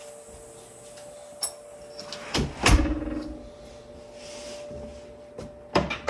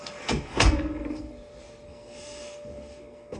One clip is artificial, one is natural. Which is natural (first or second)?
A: first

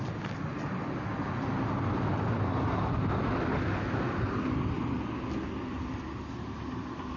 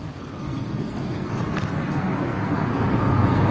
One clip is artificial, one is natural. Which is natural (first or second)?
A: first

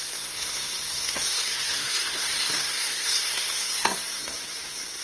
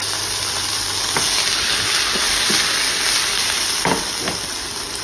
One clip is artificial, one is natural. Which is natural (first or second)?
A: second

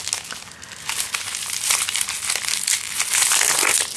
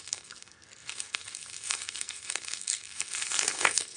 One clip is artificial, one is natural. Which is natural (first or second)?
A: first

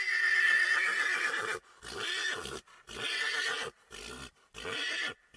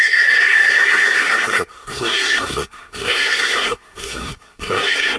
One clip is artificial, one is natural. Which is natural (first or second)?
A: first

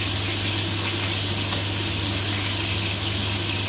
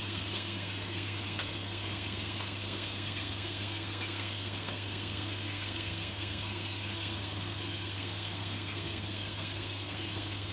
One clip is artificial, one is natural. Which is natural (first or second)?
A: first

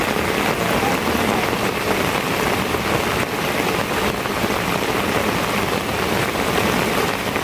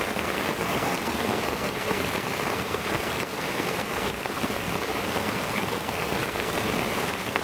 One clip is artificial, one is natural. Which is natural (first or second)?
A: first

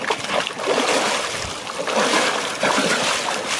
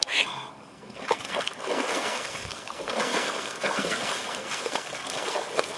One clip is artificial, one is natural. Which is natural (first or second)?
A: first